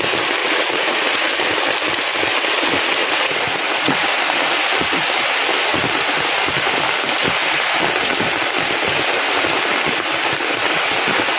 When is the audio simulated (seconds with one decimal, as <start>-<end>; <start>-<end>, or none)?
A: 0.4-1.3; 3.0-4.2